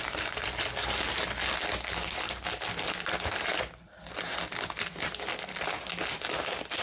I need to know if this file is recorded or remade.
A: recorded